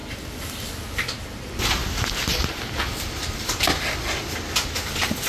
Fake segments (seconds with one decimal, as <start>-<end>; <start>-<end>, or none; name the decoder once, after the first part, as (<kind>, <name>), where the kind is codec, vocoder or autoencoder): 0.0-0.6 (vocoder, BigVGAN v2)